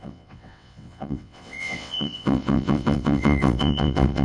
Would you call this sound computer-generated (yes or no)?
yes